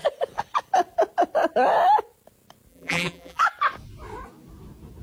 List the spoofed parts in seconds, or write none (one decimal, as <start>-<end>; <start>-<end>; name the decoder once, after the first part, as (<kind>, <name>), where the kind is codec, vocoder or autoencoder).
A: 2.7-3.4 (vocoder, BigVGAN v2)